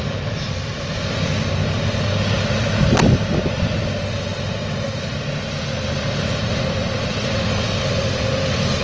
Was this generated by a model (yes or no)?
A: yes